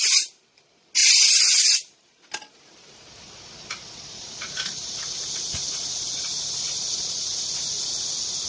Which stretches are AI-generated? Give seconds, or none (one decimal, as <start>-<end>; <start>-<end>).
none

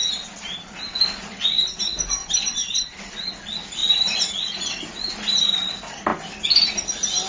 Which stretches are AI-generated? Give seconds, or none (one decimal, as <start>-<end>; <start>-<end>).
2.2-3.3

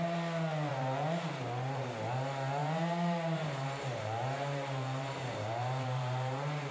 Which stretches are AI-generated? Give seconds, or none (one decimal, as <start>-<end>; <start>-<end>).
0.7-1.4; 2.6-6.7